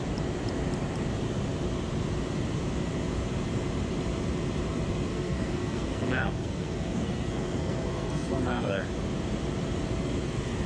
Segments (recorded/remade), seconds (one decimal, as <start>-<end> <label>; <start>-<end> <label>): 0.0-5.1 recorded; 5.1-8.8 remade; 8.8-10.7 recorded